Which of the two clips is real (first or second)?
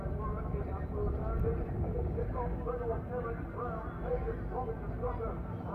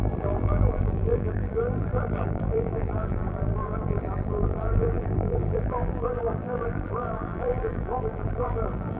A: first